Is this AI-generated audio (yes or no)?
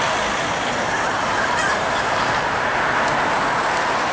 no